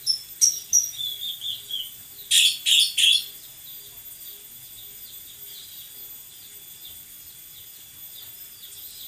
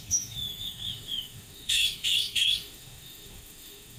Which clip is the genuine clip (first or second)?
first